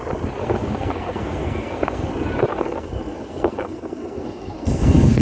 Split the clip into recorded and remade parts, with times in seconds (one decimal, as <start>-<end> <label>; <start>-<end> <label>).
0.0-0.4 recorded; 0.4-2.1 remade; 2.1-2.5 recorded; 2.5-5.2 remade